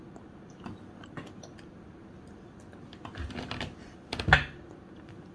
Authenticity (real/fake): real